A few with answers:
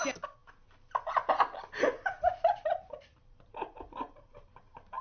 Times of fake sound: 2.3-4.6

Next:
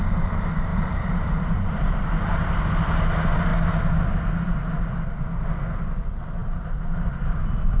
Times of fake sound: 0.7-2.1; 6.4-7.2

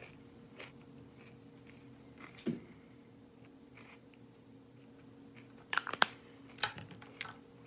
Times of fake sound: 2.5-4.8

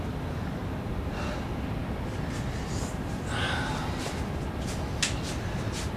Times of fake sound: none

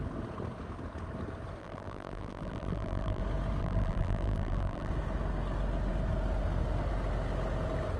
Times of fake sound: 1.6-3.2; 3.6-4.9

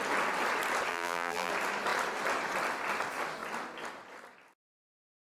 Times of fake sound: 0.9-1.5